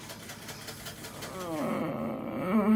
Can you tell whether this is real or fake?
real